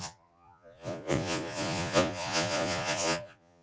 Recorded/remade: remade